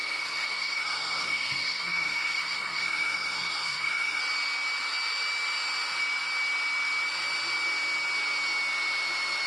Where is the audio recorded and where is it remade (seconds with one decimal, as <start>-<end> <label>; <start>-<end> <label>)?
0.0-4.2 remade; 4.2-9.5 recorded